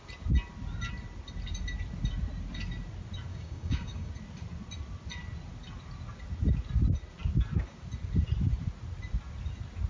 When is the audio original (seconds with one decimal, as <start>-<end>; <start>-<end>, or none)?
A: 0.0-3.3; 4.1-9.9